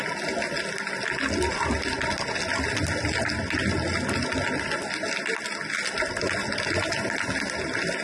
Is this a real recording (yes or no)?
yes